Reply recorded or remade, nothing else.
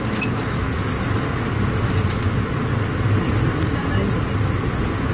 recorded